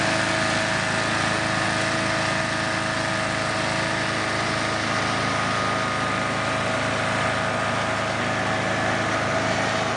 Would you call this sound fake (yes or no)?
no